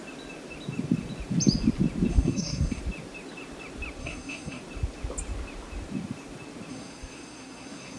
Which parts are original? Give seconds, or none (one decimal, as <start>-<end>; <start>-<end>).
0.0-2.1; 2.8-4.0; 4.6-6.7